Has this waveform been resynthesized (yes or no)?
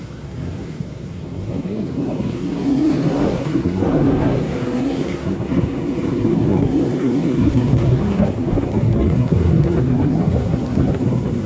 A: yes